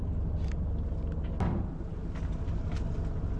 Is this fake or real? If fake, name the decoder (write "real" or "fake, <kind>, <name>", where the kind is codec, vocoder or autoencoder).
real